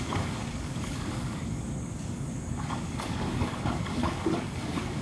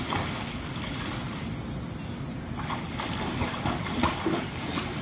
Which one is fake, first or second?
first